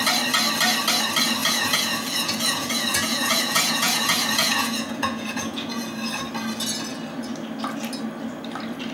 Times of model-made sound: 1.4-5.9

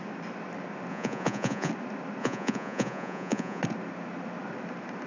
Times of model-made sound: 0.9-1.7; 2.2-3.6

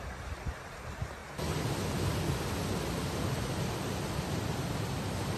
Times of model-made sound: none

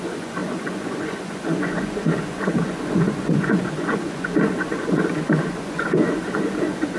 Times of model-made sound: 0.0-7.0